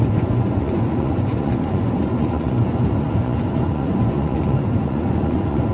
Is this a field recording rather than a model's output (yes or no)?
no